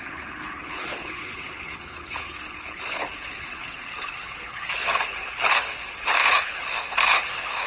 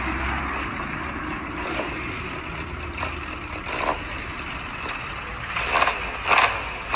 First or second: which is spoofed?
first